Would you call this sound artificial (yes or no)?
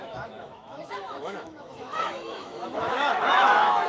yes